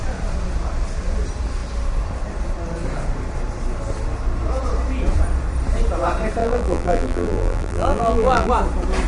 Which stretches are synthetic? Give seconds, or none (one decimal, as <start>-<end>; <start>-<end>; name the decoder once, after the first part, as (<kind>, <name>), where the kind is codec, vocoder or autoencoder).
6.4-8.5 (vocoder, BigVGAN v2)